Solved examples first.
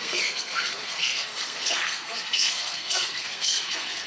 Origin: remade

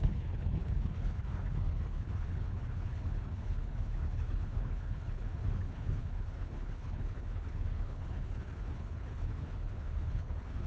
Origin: remade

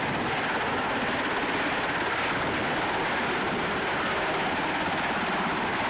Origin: recorded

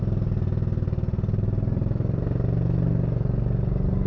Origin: recorded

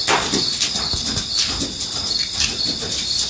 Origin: recorded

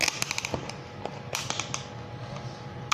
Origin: recorded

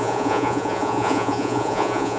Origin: remade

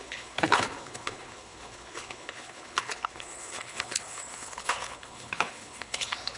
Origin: remade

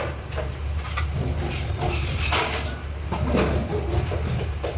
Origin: recorded